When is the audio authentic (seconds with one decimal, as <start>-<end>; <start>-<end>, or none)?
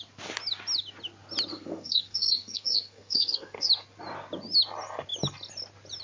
0.0-1.5; 3.7-6.0